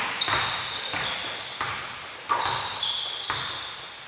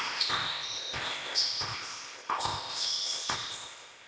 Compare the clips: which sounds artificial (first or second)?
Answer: second